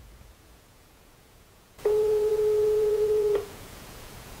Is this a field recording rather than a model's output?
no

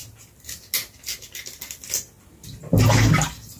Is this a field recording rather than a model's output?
yes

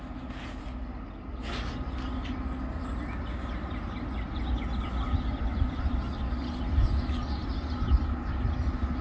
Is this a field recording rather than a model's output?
yes